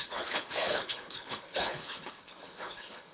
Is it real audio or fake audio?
fake